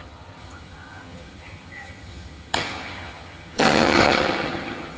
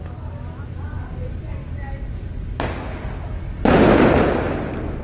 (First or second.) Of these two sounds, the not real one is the first